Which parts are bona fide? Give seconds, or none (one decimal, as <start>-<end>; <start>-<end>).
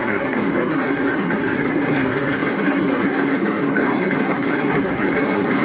none